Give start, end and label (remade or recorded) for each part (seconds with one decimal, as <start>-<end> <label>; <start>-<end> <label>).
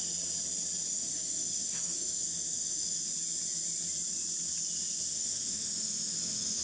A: 0.0-0.9 recorded; 0.9-3.0 remade; 3.0-5.1 recorded; 5.1-6.6 remade